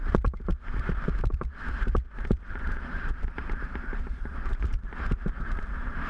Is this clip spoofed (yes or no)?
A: yes